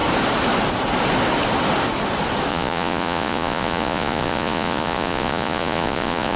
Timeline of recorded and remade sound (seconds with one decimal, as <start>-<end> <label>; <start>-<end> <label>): 0.0-2.5 recorded; 2.5-6.4 remade